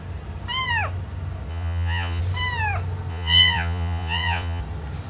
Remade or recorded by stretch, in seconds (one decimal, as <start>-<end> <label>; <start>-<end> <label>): 0.0-1.5 recorded; 1.5-2.2 remade; 2.2-3.1 recorded; 3.1-4.6 remade; 4.6-5.1 recorded